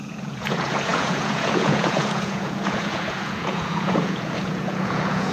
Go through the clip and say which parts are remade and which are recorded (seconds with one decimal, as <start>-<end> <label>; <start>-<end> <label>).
0.0-5.3 remade